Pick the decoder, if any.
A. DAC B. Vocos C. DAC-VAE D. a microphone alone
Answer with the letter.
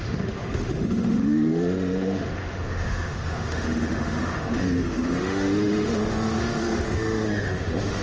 C